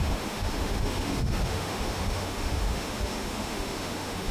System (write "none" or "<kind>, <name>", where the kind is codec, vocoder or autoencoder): autoencoder, DAC-VAE